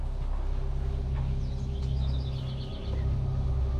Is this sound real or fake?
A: real